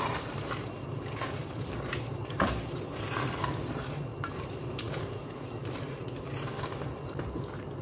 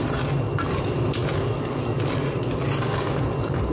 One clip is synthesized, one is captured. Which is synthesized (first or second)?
first